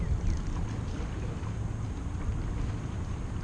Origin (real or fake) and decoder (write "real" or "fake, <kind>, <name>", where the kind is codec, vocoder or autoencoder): real